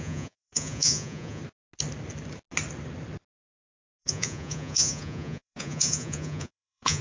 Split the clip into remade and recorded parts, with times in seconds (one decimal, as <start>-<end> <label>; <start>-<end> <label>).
0.0-1.4 remade; 1.4-4.0 recorded; 4.0-7.0 remade